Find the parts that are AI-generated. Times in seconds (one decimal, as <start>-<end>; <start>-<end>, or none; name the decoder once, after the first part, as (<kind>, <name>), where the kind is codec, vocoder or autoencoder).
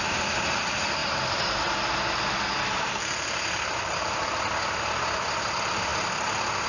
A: 1.0-4.3 (vocoder, BigVGAN v2)